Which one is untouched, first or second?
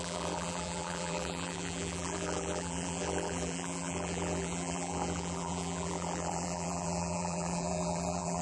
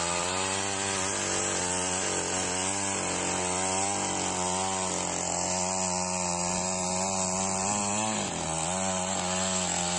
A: second